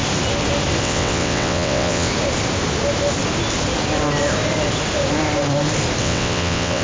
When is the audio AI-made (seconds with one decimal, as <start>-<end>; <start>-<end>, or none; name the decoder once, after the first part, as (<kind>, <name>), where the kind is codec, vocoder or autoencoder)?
0.8-2.1 (vocoder, WaveNeXt); 6.0-6.8